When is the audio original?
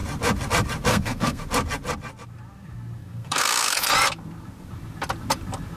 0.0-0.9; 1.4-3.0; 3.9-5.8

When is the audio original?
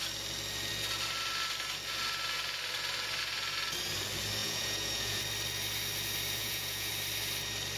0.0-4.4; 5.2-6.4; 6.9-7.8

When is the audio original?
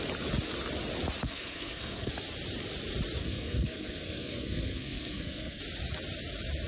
0.0-1.2; 2.1-3.2; 5.6-6.7